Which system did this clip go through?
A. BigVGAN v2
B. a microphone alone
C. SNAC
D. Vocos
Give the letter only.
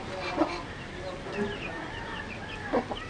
B